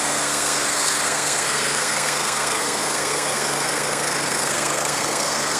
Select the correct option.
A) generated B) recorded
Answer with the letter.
A